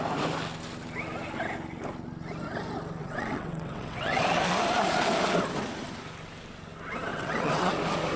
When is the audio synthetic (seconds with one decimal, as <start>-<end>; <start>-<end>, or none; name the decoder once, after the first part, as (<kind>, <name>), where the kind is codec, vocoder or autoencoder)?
3.0-4.2 (vocoder, WaveNeXt); 7.1-7.7